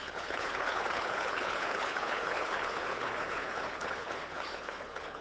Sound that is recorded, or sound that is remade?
remade